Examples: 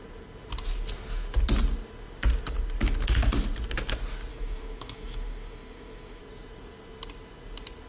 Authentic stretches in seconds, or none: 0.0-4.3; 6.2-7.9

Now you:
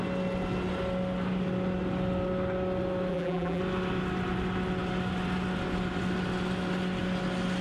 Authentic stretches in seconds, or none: 0.0-3.1; 3.6-7.6